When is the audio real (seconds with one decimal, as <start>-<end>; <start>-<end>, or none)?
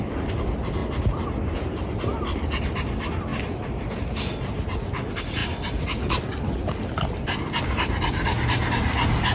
0.0-9.3